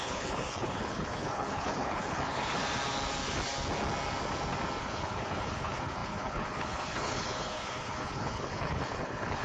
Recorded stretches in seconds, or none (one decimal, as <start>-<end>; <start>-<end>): 2.6-4.8